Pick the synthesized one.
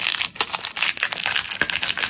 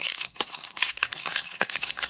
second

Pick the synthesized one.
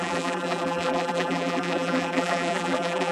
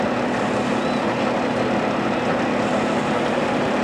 first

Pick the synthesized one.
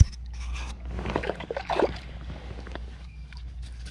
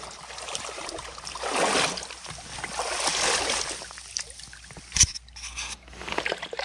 first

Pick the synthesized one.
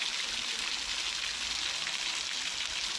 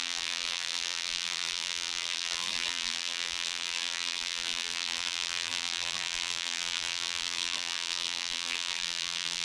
second